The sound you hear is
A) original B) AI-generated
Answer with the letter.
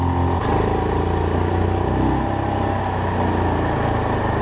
A